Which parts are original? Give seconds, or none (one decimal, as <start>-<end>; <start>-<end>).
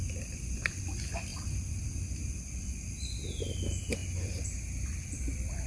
0.0-1.3; 2.3-4.0